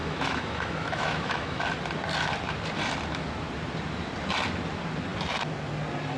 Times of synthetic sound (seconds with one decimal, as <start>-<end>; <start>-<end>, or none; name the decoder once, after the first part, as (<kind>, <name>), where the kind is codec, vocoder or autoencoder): 0.0-1.6 (autoencoder, DAC-VAE)